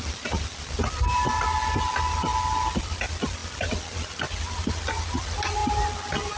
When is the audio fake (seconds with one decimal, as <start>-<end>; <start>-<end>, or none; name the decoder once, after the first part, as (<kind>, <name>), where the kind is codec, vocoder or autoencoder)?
none